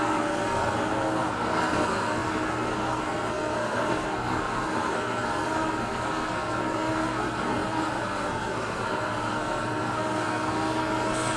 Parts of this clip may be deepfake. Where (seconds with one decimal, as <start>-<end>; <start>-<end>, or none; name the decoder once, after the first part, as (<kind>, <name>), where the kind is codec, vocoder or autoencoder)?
0.0-11.4 (codec, SNAC)